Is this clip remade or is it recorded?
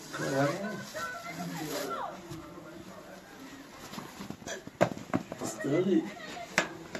recorded